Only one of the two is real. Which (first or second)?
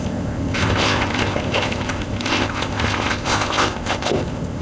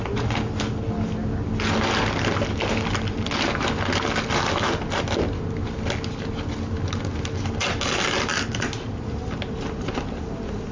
second